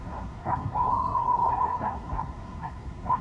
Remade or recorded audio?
remade